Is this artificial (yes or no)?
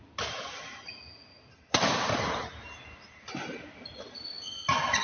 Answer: no